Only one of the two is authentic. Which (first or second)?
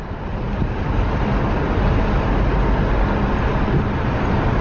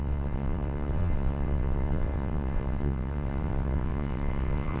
first